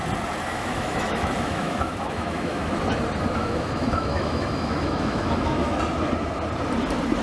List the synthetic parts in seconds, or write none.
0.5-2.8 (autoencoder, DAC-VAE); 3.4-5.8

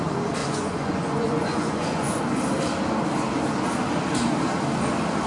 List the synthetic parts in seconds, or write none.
0.4-2.2 (vocoder, Vocos)

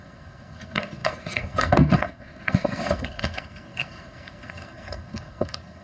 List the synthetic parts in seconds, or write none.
0.0-5.8 (codec, SNAC)

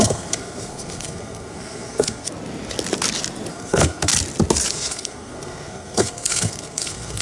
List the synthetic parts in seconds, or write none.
0.0-2.3 (codec, SNAC); 3.5-4.1; 4.7-7.2

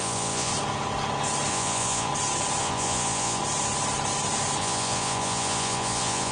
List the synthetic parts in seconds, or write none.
0.0-0.5 (vocoder, Vocos); 1.5-2.1; 2.6-3.4; 4.6-6.3

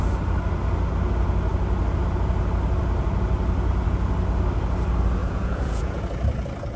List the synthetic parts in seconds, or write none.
5.2-6.0 (vocoder, Vocos)

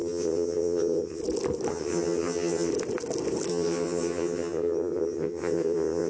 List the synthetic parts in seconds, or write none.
0.0-1.2 (vocoder, HiFi-GAN); 1.7-2.7; 3.5-6.1

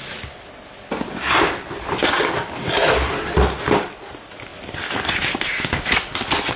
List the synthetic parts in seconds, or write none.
none